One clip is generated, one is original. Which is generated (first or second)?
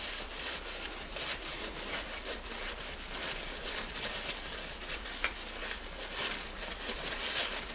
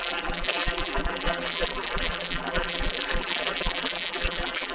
second